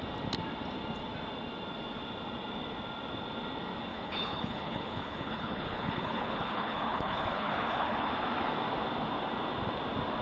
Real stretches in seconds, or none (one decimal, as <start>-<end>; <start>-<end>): 0.0-3.9; 8.1-10.2